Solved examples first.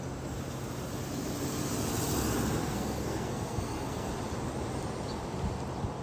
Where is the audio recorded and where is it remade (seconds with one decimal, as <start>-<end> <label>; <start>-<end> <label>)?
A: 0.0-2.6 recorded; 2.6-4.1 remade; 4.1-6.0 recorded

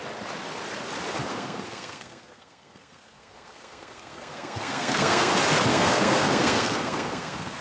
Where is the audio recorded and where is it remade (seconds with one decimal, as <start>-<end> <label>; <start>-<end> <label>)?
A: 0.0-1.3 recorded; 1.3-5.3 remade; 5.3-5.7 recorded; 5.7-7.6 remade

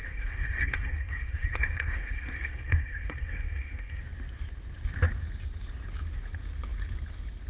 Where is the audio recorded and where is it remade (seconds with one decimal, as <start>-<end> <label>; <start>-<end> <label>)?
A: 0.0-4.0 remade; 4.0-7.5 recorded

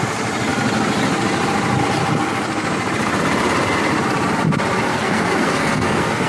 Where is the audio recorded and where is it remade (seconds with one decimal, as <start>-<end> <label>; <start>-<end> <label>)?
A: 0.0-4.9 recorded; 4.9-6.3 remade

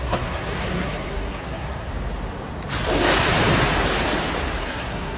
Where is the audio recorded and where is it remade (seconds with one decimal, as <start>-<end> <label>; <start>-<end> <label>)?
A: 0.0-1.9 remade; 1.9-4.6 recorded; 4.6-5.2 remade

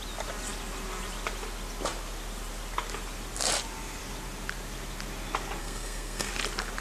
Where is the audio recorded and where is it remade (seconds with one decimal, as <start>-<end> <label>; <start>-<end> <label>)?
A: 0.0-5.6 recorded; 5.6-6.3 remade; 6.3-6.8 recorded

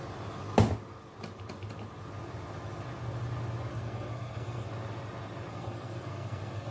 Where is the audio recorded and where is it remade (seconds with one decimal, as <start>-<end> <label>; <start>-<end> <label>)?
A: 0.0-3.7 recorded; 3.7-4.7 remade; 4.7-5.5 recorded; 5.5-6.7 remade

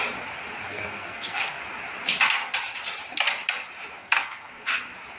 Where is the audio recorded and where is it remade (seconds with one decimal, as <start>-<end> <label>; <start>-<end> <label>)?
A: 0.0-0.7 recorded; 0.7-1.6 remade; 1.6-4.0 recorded; 4.0-4.8 remade; 4.8-5.2 recorded